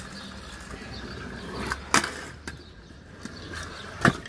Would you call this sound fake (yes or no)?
no